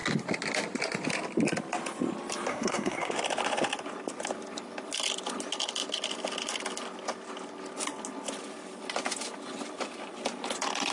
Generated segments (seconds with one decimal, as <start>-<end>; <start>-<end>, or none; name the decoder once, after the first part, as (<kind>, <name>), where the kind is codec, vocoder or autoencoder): 2.5-3.1 (codec, SNAC)

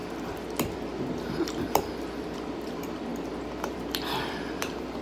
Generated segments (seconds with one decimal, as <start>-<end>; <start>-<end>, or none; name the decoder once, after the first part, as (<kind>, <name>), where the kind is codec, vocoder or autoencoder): 1.5-3.1 (vocoder, BigVGAN v2); 3.7-5.0